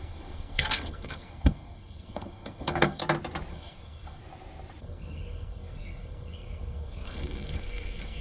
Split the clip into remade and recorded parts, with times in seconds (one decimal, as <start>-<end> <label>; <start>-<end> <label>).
0.0-3.0 remade; 3.0-3.5 recorded; 3.5-4.2 remade; 4.2-4.8 recorded; 4.8-8.2 remade